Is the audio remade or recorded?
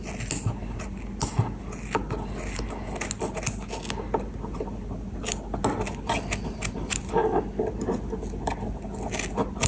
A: recorded